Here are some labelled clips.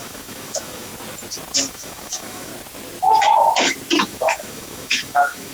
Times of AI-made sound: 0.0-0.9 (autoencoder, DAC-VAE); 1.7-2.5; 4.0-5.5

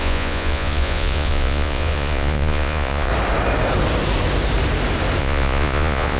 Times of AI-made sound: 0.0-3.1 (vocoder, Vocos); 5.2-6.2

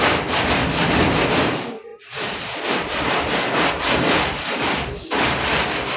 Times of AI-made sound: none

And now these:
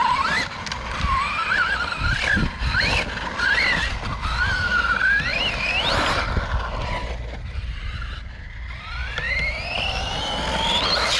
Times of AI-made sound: none

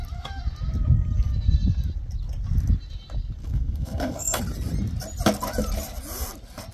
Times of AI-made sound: 3.4-4.4 (codec, SNAC)

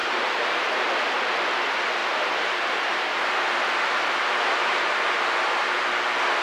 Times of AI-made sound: 0.0-0.7 (vocoder, BigVGAN v2); 2.0-5.8

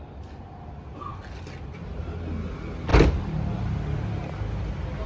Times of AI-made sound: none

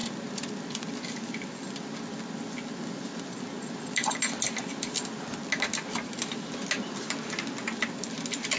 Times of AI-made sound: none